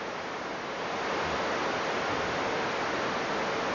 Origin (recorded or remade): recorded